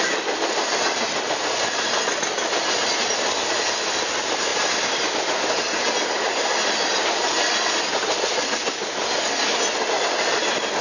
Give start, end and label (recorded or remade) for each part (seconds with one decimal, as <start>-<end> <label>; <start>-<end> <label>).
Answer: 0.0-10.8 recorded